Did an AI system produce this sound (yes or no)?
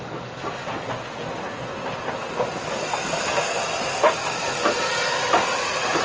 no